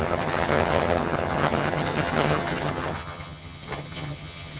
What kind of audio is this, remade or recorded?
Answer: remade